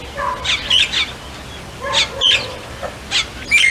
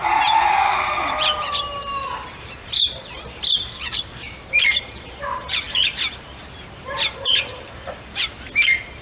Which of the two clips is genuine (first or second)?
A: first